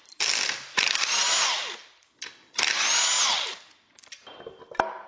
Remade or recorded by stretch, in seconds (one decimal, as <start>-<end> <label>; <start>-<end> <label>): 0.0-5.1 recorded